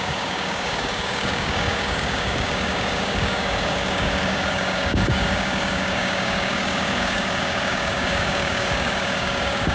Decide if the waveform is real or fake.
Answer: fake